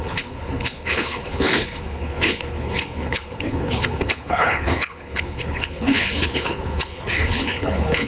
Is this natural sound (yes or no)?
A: no